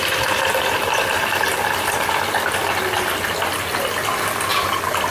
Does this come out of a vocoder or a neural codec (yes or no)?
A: no